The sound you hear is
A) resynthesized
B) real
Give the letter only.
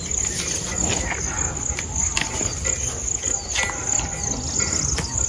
B